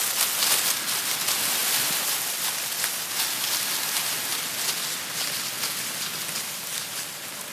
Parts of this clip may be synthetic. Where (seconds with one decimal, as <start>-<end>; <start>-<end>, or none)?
none

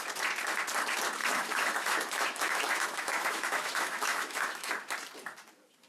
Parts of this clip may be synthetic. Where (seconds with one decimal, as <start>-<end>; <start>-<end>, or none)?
1.2-4.7

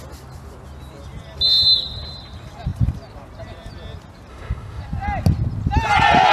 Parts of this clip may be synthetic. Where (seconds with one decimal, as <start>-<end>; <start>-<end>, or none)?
4.3-4.8

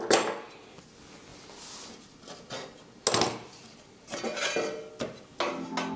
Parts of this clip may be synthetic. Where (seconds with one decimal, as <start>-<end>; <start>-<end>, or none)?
none

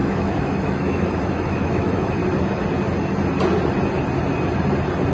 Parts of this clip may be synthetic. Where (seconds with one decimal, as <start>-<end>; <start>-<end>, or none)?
0.0-2.2

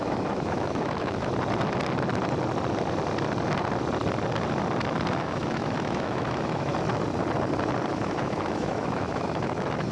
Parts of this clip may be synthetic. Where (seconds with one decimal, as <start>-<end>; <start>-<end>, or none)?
0.0-1.3; 5.2-6.7; 7.9-9.9